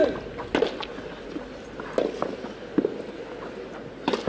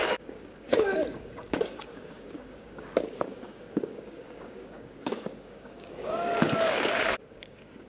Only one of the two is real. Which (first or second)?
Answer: first